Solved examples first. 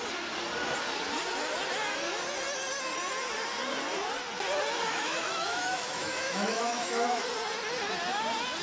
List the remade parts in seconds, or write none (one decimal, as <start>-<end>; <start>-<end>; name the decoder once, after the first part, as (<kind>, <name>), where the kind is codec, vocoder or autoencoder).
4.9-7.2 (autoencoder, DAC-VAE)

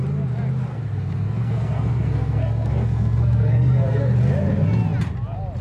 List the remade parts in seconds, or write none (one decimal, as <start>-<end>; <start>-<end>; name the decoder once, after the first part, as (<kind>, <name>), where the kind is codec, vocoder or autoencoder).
0.7-4.1 (codec, SNAC)

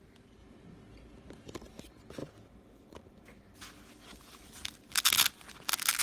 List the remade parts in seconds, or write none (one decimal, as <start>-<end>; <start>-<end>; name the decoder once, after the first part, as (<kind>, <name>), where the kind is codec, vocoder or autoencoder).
none

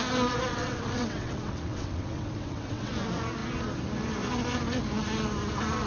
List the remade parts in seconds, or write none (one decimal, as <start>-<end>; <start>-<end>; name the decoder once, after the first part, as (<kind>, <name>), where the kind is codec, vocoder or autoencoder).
0.5-2.9 (vocoder, WaveNeXt)

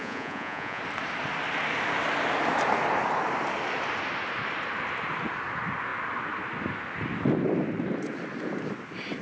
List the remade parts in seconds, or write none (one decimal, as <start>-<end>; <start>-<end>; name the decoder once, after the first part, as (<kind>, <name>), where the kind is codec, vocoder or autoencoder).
0.0-0.8 (vocoder, Vocos)

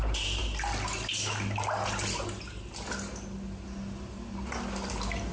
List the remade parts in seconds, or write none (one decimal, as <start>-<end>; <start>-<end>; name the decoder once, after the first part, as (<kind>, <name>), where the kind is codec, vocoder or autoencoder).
none

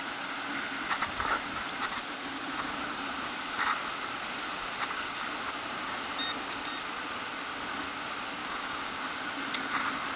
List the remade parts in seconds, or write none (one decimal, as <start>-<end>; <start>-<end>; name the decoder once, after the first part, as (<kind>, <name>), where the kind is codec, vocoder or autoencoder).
8.4-9.0 (codec, DAC)